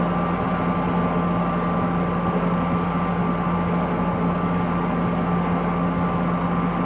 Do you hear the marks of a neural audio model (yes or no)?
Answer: no